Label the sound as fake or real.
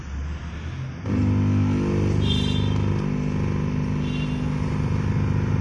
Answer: real